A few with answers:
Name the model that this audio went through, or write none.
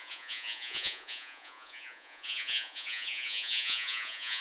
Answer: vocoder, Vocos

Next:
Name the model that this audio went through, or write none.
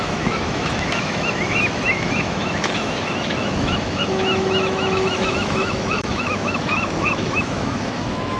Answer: autoencoder, DAC-VAE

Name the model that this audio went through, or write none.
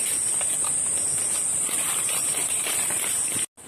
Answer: none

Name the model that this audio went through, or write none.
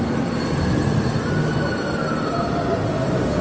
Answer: none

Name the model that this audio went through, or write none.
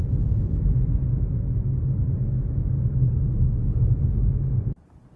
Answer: none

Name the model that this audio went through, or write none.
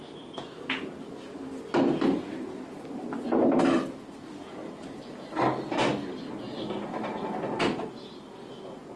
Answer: none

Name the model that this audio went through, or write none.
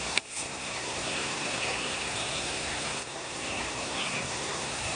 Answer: codec, SNAC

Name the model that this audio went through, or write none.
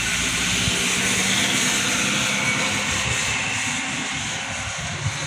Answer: none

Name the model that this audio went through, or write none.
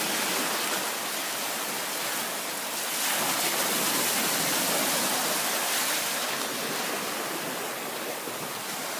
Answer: none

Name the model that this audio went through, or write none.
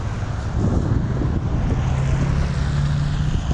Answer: none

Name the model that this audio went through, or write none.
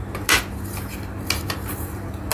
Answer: none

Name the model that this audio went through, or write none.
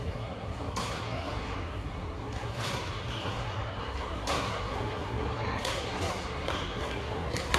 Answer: codec, SNAC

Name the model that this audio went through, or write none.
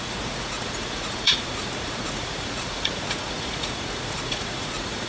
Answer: vocoder, Vocos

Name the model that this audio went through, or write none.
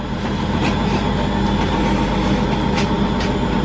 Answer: none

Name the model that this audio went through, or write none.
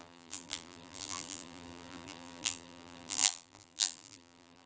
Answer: vocoder, BigVGAN v2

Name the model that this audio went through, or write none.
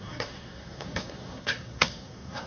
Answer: codec, SNAC